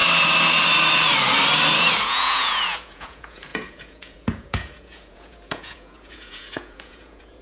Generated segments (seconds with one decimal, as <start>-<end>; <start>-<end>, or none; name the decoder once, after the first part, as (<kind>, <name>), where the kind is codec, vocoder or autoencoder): 2.0-7.4 (vocoder, Vocos)